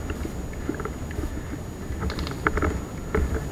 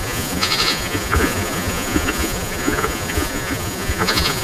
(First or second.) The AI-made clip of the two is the second